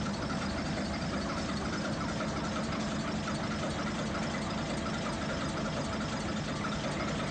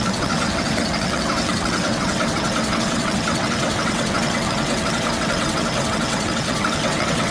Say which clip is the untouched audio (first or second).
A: first